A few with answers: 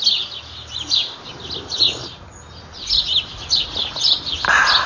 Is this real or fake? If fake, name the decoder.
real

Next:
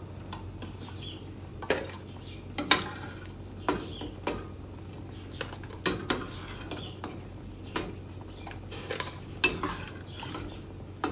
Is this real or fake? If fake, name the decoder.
real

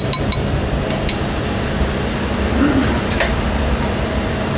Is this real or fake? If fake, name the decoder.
real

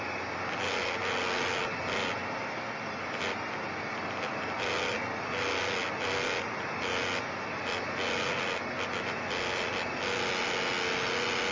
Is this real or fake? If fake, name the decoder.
real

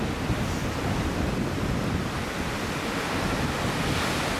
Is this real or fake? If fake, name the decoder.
real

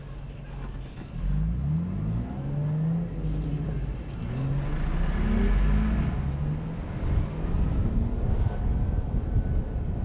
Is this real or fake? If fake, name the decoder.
real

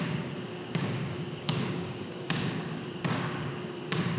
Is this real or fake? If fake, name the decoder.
fake, codec, DAC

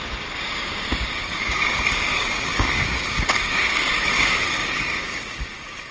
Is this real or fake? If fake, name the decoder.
fake, codec, DAC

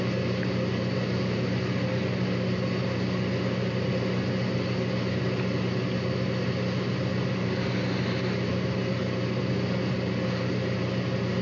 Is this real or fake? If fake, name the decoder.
real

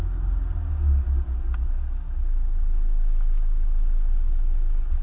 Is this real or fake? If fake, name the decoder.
real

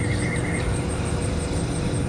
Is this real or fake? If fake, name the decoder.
real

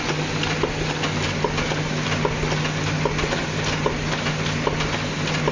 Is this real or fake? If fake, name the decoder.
real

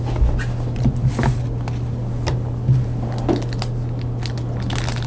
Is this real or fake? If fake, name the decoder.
real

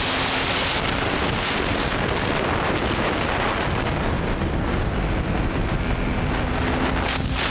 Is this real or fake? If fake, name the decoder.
real